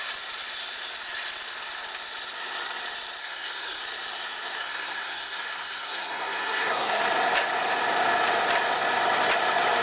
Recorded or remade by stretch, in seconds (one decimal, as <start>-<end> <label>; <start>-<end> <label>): 0.0-3.2 recorded; 3.2-3.8 remade; 3.8-4.6 recorded; 4.6-7.0 remade; 7.0-9.8 recorded